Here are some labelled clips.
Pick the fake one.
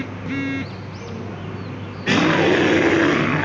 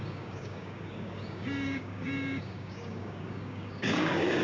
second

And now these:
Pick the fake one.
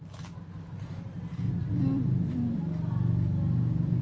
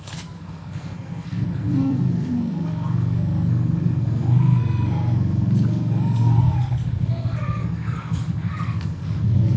second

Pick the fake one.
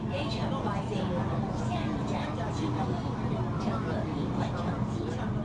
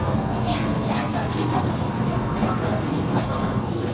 second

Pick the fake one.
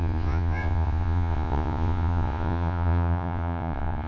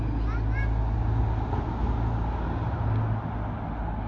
first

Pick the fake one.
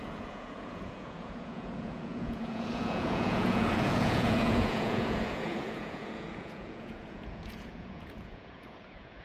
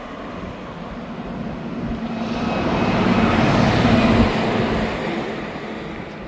first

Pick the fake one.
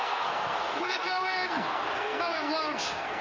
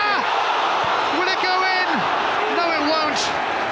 first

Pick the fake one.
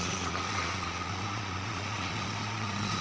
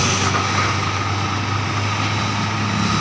first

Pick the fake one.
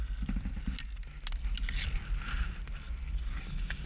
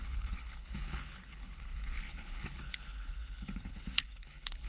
second